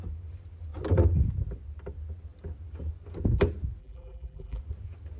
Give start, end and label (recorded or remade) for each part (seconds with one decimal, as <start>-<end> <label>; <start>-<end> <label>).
0.0-3.8 recorded; 3.8-4.6 remade; 4.6-5.2 recorded